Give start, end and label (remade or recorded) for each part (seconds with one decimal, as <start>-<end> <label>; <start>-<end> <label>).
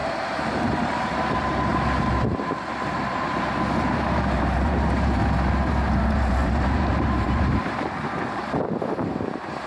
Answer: 0.0-1.7 remade; 1.7-3.8 recorded; 3.8-5.2 remade; 5.2-6.1 recorded; 6.1-9.7 remade